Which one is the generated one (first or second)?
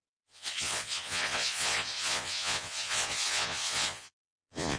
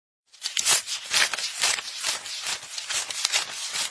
first